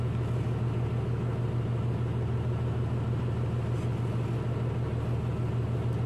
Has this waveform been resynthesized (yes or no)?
no